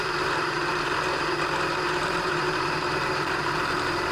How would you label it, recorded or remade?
remade